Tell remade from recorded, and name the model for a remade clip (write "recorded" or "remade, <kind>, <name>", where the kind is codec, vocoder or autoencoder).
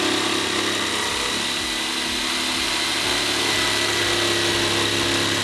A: recorded